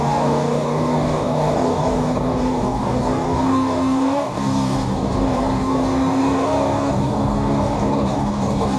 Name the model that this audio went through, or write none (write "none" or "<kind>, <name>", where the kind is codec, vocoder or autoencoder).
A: codec, DAC